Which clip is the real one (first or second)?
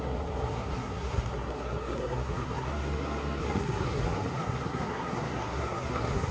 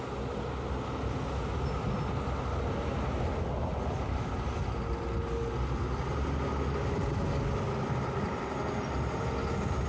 second